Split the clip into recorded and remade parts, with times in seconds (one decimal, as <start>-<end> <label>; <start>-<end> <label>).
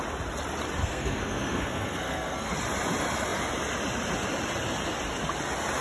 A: 0.0-0.8 recorded; 0.8-2.5 remade; 2.5-5.8 recorded